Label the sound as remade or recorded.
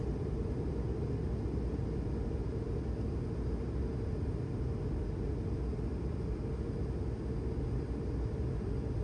recorded